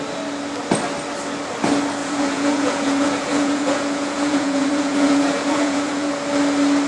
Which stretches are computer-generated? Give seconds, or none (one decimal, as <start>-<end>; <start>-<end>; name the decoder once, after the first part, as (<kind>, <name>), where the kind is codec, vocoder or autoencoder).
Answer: 2.0-6.1 (vocoder, Vocos)